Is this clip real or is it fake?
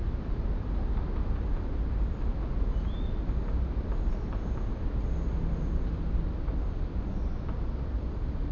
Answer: real